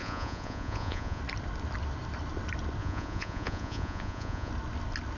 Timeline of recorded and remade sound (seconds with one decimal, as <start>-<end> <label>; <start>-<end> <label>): 0.0-1.2 remade; 1.2-2.8 recorded; 2.8-4.5 remade; 4.5-5.2 recorded